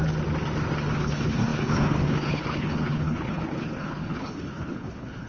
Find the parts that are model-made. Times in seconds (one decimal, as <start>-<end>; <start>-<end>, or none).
1.0-5.3